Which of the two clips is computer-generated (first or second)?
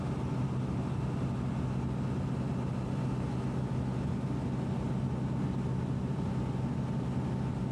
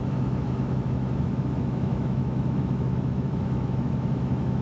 second